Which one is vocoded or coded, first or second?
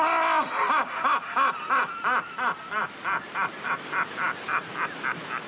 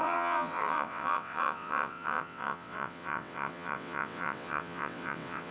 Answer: second